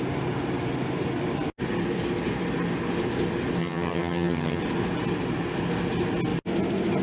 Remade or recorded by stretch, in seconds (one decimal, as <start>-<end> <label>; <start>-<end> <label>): 0.0-3.6 recorded; 3.6-4.6 remade; 4.6-7.0 recorded